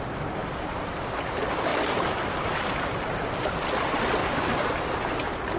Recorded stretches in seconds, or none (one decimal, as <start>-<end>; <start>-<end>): 0.0-1.7; 3.2-4.2